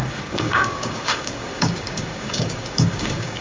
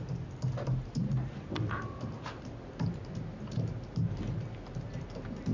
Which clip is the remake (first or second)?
first